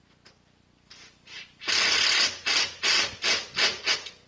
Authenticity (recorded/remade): recorded